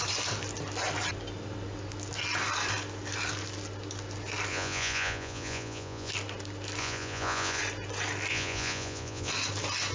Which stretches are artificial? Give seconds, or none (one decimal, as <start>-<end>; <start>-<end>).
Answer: 4.5-6.1; 6.8-7.6; 8.3-9.3